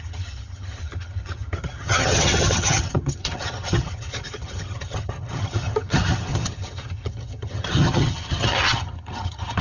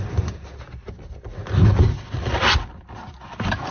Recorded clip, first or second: second